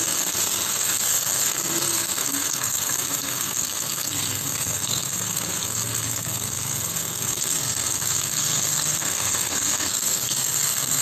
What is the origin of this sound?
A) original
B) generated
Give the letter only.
B